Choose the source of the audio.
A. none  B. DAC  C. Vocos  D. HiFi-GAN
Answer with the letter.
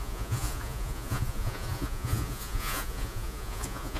C